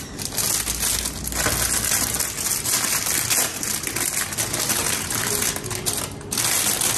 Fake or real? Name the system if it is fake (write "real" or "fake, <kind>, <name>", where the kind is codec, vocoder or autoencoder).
real